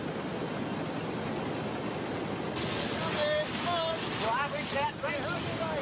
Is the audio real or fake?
real